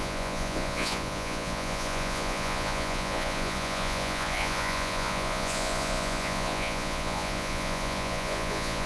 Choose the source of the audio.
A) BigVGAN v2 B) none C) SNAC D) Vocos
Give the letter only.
D